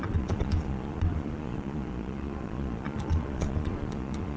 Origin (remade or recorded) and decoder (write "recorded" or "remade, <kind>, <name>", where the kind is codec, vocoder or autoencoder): remade, vocoder, Vocos